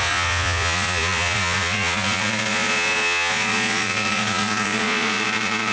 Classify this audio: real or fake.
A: fake